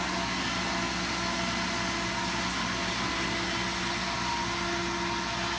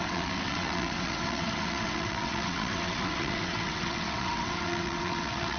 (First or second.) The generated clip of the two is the second